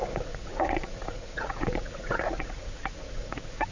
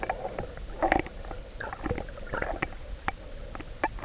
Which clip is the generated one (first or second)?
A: first